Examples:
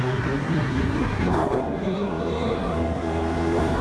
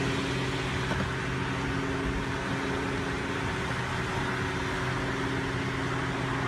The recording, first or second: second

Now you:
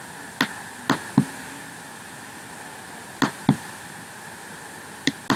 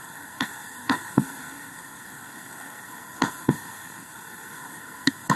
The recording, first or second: first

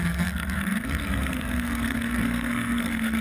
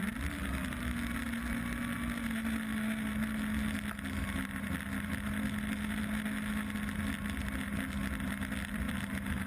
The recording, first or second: second